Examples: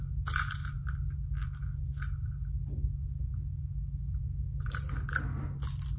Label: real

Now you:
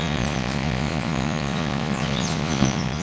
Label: fake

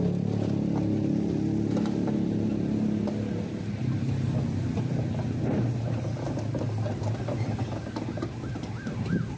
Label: real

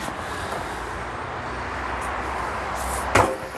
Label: real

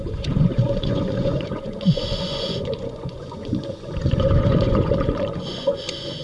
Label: fake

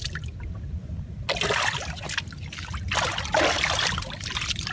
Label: real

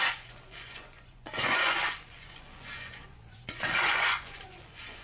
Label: fake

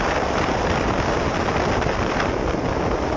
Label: real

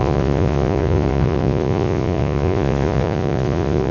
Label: fake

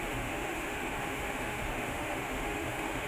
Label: fake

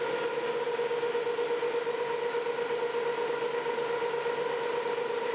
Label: real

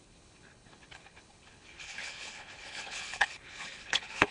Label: fake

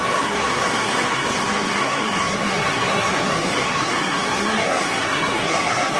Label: fake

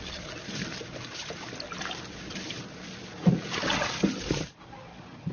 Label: real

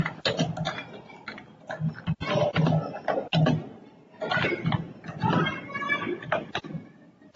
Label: real